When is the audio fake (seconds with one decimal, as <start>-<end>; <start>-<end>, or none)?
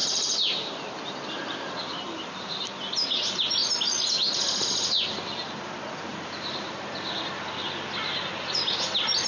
0.0-2.7; 6.1-6.8